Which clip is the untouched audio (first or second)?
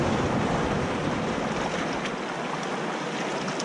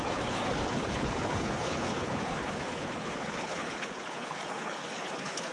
first